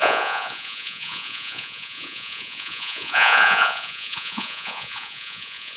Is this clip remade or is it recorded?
remade